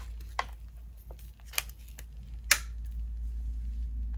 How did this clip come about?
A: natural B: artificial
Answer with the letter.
A